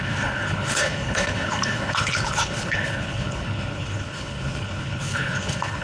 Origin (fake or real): fake